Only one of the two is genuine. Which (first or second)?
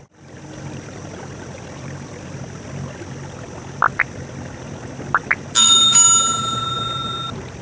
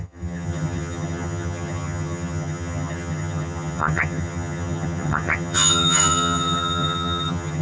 first